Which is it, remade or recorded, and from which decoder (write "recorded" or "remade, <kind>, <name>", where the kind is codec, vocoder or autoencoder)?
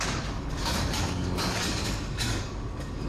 remade, codec, DAC